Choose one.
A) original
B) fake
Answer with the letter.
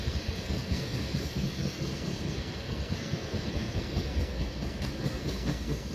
B